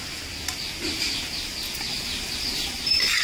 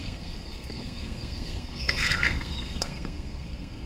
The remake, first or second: second